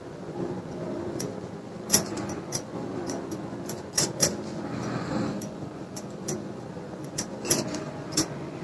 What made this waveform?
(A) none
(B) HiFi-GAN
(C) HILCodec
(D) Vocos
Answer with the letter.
D